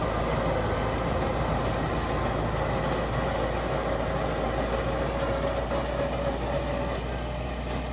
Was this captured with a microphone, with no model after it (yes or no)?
yes